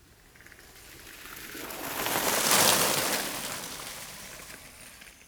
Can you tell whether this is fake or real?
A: real